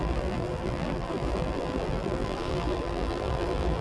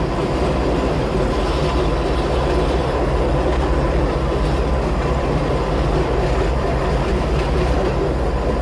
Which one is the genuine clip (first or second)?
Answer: second